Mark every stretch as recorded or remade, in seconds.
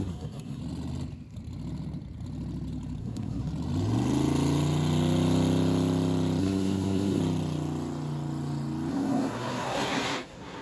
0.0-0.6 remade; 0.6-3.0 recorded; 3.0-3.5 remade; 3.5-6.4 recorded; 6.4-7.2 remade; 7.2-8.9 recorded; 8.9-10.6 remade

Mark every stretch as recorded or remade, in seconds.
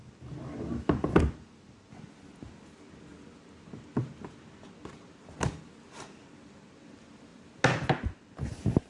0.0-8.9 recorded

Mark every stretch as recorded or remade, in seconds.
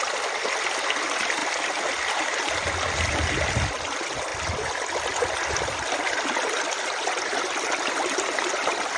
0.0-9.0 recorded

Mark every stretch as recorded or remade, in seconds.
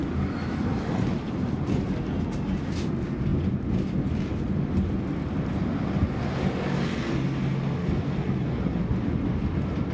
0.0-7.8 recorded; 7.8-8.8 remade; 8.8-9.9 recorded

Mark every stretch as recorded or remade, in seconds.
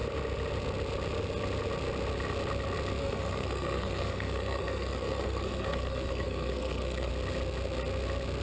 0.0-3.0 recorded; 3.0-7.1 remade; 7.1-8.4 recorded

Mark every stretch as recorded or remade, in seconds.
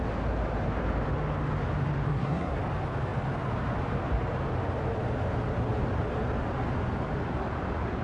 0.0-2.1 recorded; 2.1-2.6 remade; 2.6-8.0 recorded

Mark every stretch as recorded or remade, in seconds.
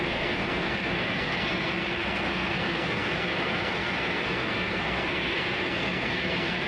0.0-6.7 remade